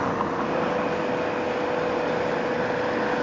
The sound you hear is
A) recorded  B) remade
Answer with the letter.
A